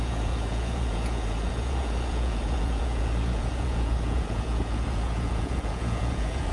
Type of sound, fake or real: fake